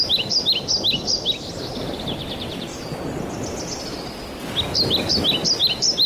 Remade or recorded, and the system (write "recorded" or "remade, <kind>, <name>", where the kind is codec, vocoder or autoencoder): recorded